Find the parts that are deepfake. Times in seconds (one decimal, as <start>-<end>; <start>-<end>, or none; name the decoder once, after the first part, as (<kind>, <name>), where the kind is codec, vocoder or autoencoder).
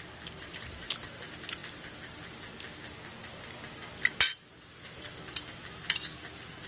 none